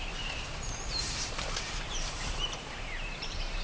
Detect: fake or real fake